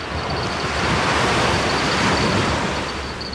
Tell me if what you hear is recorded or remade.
recorded